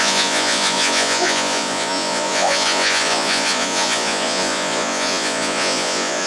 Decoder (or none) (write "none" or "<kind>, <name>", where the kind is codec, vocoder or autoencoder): vocoder, Vocos